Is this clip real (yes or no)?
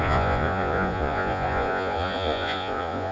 no